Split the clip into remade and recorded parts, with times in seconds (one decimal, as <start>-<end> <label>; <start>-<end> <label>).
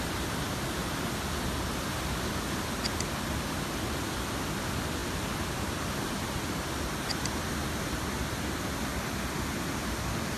0.0-10.4 recorded